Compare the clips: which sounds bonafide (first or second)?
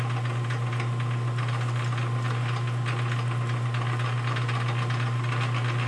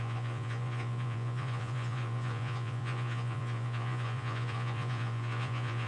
first